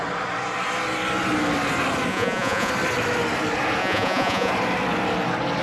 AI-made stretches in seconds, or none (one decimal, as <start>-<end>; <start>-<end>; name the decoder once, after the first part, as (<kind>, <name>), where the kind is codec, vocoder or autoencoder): 2.1-2.7 (vocoder, Vocos); 3.8-4.5